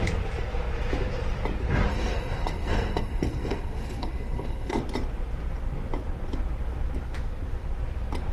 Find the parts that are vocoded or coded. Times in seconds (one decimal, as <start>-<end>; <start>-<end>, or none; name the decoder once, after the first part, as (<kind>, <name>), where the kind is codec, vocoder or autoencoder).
1.9-4.8 (codec, SNAC)